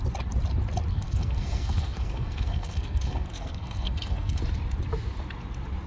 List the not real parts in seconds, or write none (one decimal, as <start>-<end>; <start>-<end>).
0.9-4.4